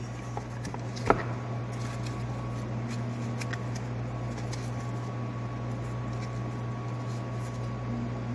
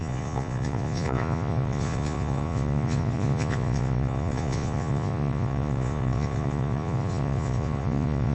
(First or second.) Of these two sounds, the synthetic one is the second